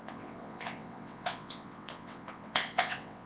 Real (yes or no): no